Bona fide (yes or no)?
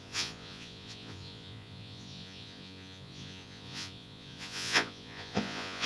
no